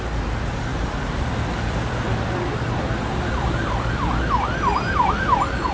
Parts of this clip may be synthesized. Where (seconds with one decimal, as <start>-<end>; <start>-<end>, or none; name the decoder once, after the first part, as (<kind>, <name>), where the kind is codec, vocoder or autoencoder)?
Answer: 0.7-4.1 (vocoder, BigVGAN v2)